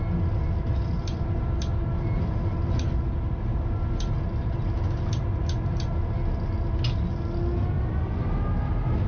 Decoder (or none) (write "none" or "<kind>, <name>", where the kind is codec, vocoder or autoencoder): none